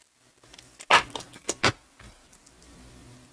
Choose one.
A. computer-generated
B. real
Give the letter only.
B